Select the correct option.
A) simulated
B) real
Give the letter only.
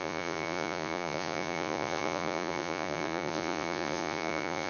A